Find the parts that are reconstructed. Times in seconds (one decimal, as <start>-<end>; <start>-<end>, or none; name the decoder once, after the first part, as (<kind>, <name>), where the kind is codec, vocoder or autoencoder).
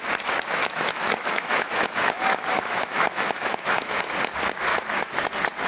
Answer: 0.6-4.0 (autoencoder, DAC-VAE); 4.7-5.3